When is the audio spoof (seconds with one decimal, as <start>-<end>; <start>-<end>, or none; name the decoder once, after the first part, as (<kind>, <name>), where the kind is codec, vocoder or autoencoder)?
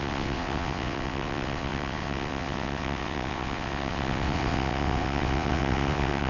0.0-6.3 (vocoder, WaveNeXt)